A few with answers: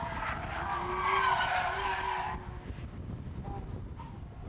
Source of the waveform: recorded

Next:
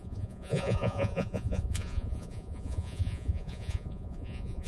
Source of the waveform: remade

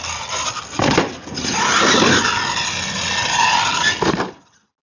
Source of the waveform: recorded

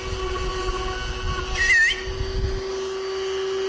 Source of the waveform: recorded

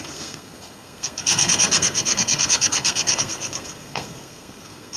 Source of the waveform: remade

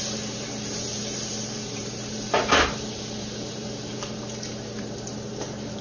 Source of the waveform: remade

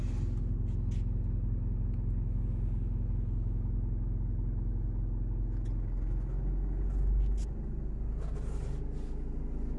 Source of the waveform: recorded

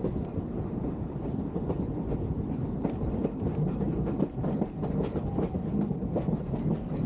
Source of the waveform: recorded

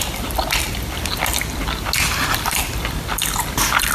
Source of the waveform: recorded